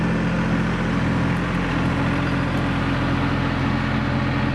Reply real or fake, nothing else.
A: real